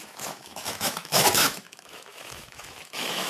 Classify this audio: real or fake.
fake